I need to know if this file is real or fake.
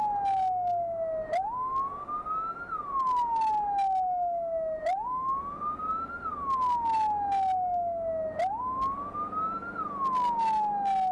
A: real